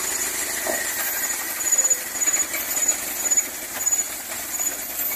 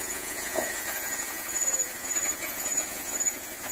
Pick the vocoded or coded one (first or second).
second